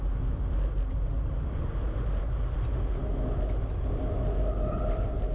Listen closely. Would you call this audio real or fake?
real